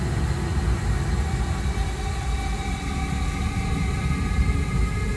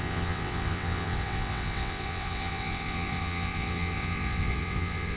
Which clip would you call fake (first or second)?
second